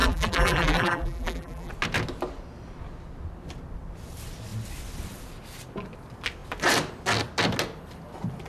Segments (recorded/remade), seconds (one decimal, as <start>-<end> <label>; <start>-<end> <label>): 0.0-1.7 remade; 1.7-8.5 recorded